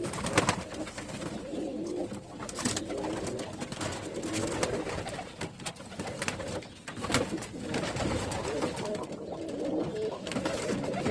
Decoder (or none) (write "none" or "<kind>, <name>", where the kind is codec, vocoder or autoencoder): none